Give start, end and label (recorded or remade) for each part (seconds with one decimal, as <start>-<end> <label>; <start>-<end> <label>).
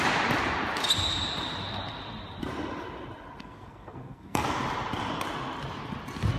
0.0-3.4 recorded; 3.4-4.6 remade; 4.6-6.4 recorded